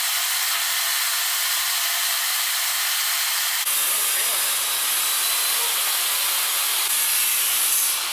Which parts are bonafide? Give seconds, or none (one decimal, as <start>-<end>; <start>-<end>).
0.0-2.0; 2.6-6.7; 7.6-8.1